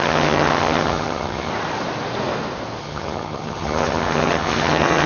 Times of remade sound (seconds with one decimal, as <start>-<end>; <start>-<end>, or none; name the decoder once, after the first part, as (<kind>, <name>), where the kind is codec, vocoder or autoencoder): 0.0-1.5 (vocoder, HiFi-GAN); 2.8-5.1